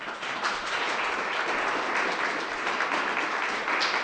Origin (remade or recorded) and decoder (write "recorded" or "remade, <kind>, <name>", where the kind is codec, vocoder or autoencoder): recorded